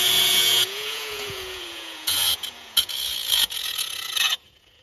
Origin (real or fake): fake